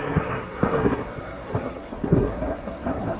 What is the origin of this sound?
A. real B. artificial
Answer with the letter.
B